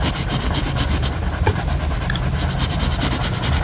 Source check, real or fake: real